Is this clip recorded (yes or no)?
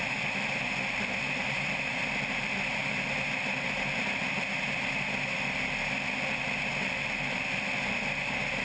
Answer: yes